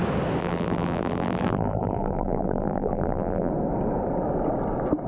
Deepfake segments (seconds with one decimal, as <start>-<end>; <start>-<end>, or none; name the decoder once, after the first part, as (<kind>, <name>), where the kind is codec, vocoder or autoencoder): 0.4-3.5 (vocoder, BigVGAN v2)